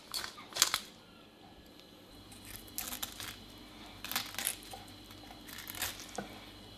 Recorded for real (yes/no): yes